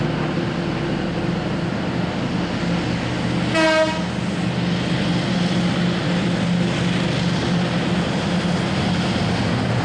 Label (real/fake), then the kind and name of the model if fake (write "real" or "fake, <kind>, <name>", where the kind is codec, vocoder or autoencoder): real